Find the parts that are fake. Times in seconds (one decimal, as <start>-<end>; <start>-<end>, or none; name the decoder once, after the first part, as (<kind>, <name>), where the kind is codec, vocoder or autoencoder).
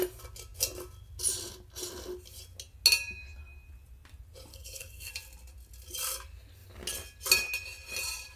4.5-5.1 (codec, SNAC)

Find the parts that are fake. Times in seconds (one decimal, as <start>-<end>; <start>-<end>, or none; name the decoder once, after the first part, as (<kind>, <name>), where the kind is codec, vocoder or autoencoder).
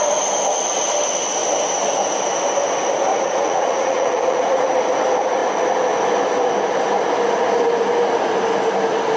3.1-4.7 (vocoder, Vocos)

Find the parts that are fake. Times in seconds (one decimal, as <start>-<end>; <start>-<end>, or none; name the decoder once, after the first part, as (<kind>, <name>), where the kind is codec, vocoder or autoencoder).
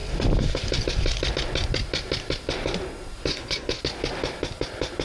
3.3-3.8 (codec, HILCodec)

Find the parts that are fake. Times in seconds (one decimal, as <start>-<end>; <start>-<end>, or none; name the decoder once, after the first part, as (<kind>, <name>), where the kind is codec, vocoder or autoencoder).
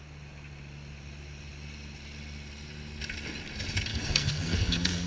3.9-5.1 (codec, SNAC)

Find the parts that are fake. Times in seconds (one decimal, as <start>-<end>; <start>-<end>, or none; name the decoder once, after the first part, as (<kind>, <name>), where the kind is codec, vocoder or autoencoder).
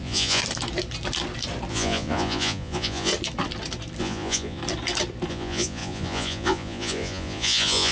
0.0-0.4 (vocoder, Vocos); 1.7-3.1; 4.0-4.6; 5.3-7.9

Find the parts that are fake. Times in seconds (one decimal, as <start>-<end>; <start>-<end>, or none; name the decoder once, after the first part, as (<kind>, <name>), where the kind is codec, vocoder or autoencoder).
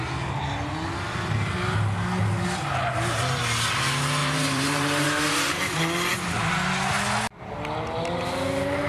4.2-5.6 (vocoder, BigVGAN v2)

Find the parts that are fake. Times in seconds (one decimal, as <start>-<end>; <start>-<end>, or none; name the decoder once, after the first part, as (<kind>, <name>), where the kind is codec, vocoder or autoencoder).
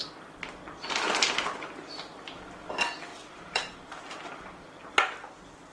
3.1-4.9 (vocoder, BigVGAN v2)